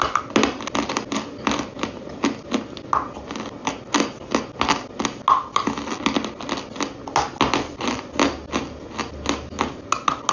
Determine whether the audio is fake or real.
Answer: real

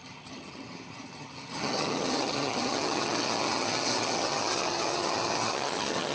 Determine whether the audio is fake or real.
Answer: fake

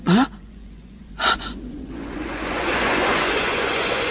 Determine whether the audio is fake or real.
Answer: fake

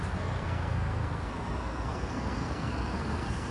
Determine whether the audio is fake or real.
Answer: fake